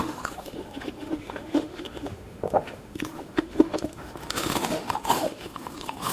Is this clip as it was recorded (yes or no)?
no